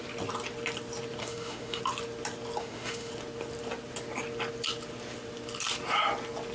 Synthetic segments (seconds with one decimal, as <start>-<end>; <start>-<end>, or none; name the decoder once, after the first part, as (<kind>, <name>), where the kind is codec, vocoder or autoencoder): 1.2-1.8 (autoencoder, DAC-VAE); 2.6-3.1